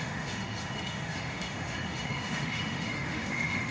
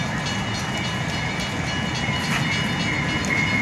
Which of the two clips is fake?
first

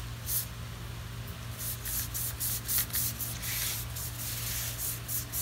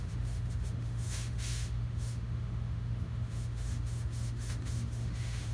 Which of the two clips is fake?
second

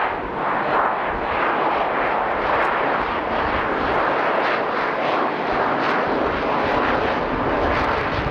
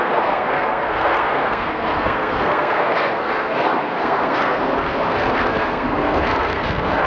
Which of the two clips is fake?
second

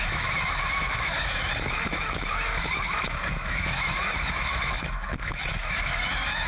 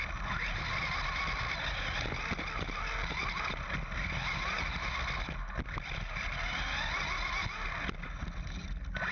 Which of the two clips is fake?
first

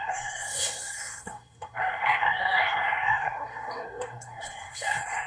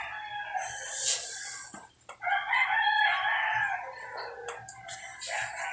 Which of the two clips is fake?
first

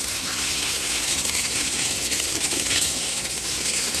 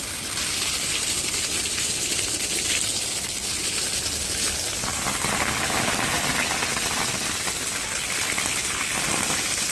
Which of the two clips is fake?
first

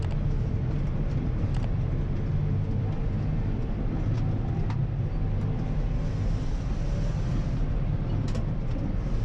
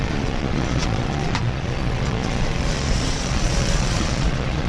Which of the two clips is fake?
second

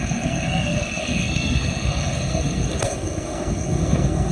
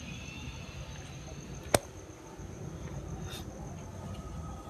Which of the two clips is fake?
first